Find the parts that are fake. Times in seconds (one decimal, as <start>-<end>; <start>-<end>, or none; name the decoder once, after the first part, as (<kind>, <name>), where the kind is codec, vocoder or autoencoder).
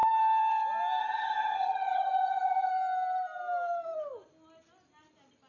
1.0-2.7 (vocoder, HiFi-GAN)